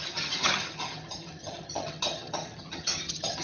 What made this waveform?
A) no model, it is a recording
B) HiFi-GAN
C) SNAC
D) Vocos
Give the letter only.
B